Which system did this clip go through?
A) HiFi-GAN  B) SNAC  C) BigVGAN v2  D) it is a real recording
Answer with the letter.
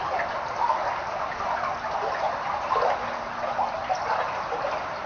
D